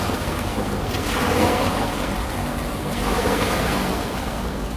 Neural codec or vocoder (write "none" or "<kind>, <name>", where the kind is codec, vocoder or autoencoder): codec, SNAC